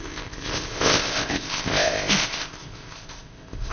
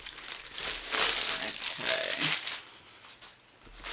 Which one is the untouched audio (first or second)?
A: second